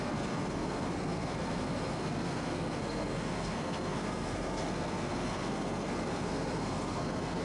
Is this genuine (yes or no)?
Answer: no